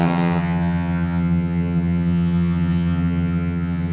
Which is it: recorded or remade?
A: remade